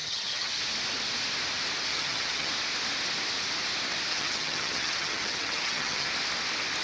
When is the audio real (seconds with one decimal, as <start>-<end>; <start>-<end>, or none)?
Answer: 0.6-1.9; 2.5-4.1; 6.1-6.8